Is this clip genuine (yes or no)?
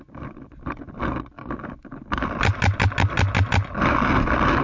yes